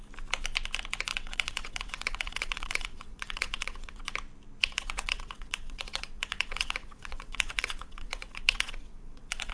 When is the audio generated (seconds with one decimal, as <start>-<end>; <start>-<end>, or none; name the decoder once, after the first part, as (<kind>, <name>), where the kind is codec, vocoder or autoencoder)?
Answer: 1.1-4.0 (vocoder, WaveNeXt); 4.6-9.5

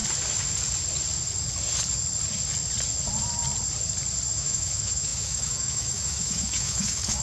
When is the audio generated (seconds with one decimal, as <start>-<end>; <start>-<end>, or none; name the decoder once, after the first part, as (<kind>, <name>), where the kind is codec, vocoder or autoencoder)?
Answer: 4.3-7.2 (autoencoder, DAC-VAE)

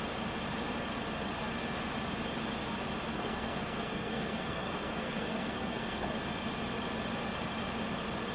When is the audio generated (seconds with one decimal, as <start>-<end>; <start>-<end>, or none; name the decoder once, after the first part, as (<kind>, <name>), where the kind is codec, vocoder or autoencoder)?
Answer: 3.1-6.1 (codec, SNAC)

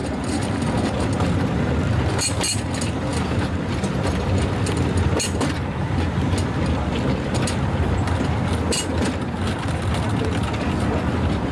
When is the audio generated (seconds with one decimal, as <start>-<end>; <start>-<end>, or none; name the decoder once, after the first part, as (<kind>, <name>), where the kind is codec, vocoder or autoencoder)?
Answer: 0.0-0.7 (vocoder, BigVGAN v2); 3.1-5.5

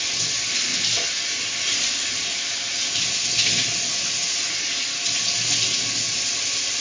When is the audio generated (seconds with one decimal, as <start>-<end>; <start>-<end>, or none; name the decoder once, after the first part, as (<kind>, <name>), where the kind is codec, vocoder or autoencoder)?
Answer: none

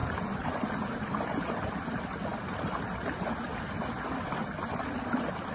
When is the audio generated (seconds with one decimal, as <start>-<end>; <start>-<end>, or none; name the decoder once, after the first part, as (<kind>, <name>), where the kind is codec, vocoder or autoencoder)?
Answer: 0.0-1.7 (vocoder, BigVGAN v2); 2.3-2.9